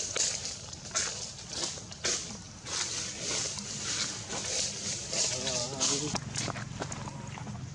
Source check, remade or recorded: recorded